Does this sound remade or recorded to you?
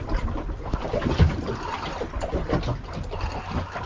recorded